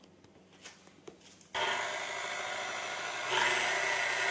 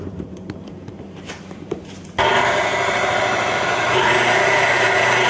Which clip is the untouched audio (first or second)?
first